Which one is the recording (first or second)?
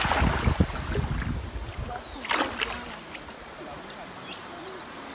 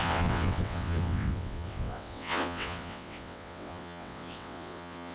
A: first